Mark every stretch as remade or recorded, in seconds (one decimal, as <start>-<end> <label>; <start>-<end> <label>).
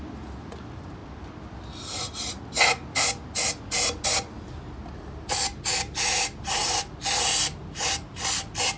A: 0.0-8.8 recorded